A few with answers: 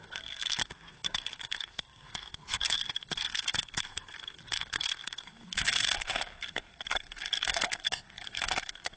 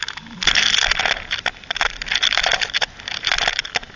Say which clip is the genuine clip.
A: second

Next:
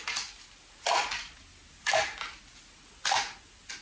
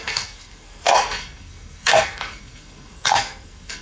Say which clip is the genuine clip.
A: first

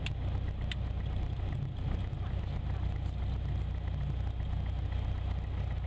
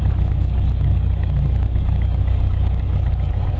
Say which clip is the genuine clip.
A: first